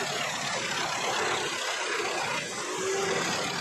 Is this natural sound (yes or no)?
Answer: yes